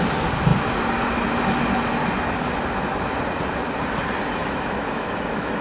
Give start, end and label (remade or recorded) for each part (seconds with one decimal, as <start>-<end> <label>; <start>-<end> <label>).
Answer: 0.0-4.4 recorded; 4.4-5.6 remade